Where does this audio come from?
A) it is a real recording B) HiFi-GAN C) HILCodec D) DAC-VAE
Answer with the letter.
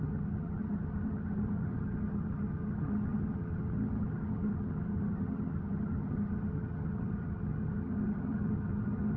B